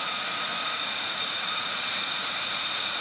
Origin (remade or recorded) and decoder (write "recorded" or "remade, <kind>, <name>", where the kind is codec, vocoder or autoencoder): remade, vocoder, Vocos